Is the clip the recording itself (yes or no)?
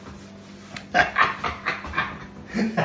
yes